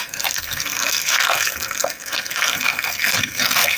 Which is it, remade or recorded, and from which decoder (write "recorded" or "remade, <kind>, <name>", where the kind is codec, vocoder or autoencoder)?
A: remade, codec, SNAC